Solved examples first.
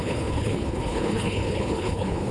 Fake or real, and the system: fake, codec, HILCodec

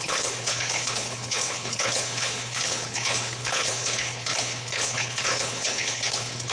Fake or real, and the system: fake, codec, HILCodec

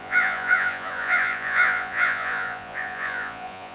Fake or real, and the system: fake, vocoder, Vocos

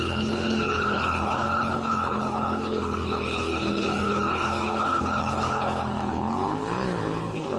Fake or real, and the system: fake, codec, HILCodec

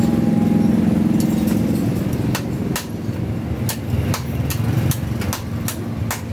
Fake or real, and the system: real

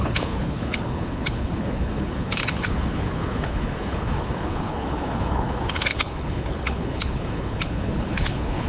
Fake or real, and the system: fake, codec, HILCodec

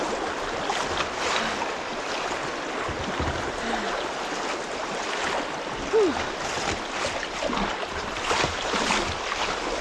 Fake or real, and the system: real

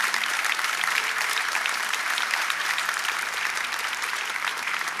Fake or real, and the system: fake, vocoder, BigVGAN v2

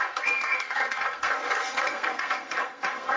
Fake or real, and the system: fake, codec, SNAC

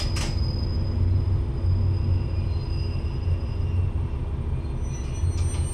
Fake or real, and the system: real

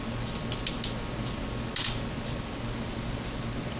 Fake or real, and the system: real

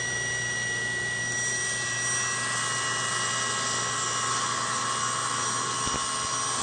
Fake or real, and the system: real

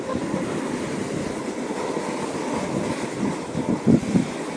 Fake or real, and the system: real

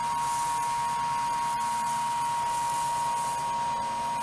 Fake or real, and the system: real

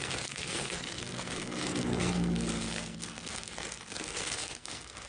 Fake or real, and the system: fake, codec, SNAC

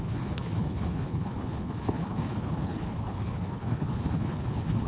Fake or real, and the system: fake, codec, HILCodec